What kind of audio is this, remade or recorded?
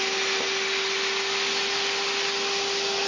recorded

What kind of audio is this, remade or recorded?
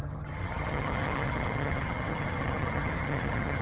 remade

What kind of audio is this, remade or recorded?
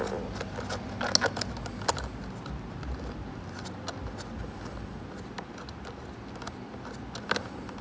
recorded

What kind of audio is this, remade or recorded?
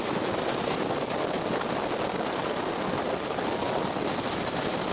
recorded